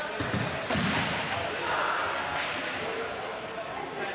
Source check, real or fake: real